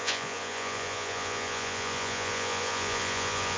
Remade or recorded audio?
remade